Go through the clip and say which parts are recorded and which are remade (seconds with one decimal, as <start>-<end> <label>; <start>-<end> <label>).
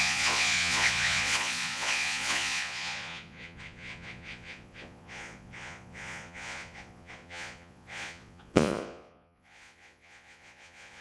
0.0-11.0 remade